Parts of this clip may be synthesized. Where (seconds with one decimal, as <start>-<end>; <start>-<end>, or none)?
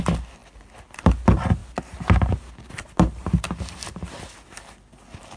none